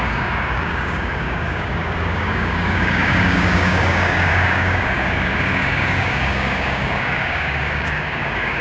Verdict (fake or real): fake